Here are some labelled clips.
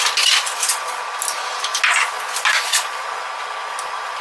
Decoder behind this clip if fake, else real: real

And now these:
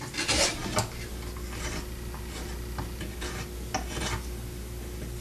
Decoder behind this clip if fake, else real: real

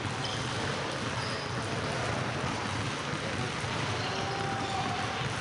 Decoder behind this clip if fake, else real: real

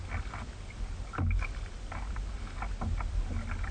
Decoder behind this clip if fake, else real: real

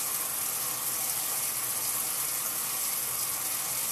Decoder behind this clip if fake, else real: real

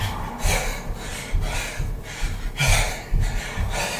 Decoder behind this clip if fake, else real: real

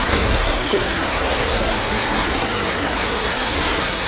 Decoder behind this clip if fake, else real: fake, codec, SNAC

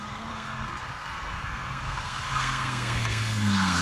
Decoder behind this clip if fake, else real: fake, codec, SNAC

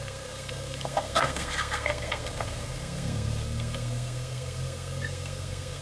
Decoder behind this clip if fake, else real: fake, codec, SNAC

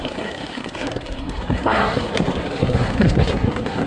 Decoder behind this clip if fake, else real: fake, codec, SNAC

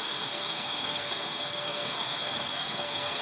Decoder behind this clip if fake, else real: fake, codec, SNAC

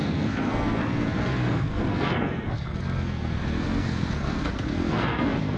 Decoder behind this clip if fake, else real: fake, codec, SNAC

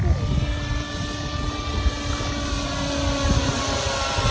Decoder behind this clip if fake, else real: real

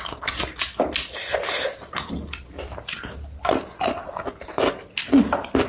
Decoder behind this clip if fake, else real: real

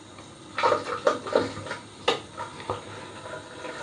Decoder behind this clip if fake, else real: real